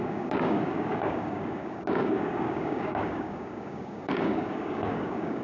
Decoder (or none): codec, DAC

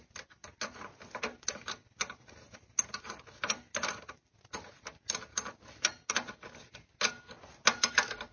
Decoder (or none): none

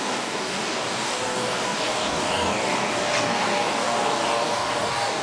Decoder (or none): codec, DAC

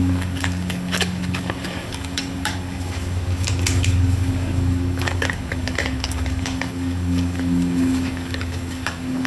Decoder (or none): codec, DAC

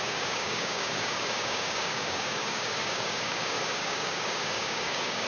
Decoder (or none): codec, DAC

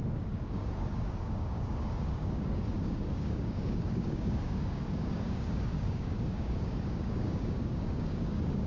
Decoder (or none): codec, DAC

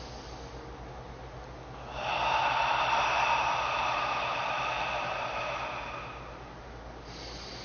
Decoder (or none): none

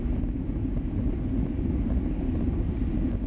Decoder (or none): none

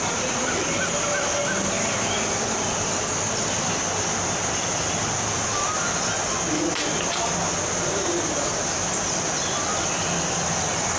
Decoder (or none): none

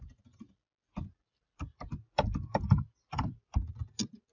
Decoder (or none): none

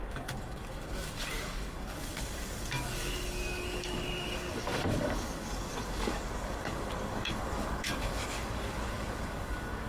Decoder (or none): codec, DAC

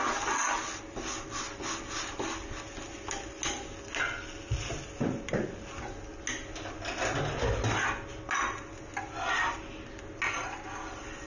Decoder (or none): none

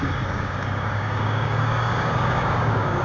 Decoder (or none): codec, DAC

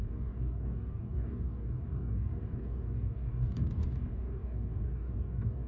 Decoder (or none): codec, DAC